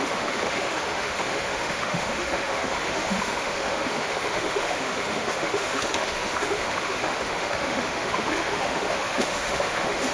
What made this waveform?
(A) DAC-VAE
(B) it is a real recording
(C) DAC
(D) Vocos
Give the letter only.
A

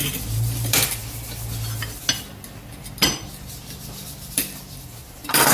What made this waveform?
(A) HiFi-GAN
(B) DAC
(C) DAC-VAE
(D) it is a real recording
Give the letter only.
D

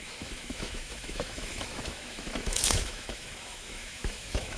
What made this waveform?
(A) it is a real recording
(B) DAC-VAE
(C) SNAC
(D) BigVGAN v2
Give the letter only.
B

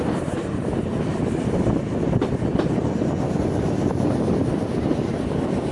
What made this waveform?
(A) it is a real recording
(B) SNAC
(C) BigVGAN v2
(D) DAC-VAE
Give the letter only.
A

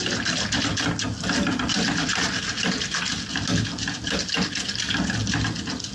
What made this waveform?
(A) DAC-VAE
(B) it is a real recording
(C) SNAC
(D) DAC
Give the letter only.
B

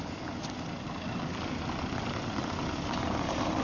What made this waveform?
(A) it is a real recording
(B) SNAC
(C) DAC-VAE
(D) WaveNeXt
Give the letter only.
A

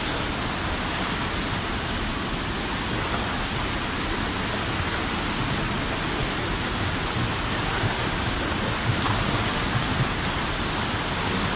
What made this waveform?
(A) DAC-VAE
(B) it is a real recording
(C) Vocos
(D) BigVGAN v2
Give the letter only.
B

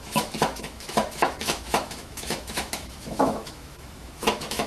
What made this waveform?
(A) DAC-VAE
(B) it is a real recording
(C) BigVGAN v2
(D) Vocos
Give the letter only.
A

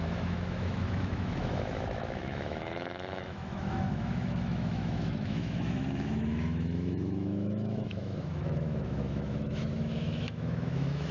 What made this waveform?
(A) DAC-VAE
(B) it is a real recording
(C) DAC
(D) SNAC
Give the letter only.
A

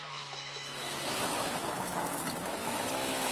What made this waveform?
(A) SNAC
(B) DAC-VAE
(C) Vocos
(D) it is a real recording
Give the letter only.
B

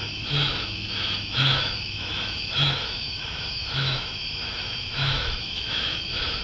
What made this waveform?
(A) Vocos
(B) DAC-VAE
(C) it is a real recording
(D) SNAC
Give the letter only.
B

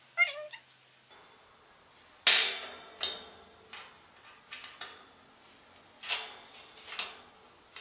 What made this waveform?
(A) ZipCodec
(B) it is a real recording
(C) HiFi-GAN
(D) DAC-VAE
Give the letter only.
B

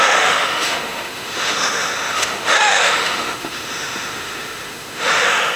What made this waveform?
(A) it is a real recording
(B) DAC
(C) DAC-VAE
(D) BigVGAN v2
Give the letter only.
C